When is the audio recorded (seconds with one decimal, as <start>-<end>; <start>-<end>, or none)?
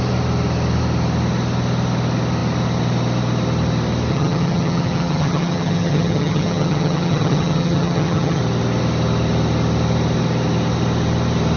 0.0-4.1; 8.4-11.6